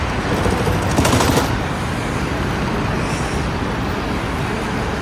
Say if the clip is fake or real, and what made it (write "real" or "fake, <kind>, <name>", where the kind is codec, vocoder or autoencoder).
real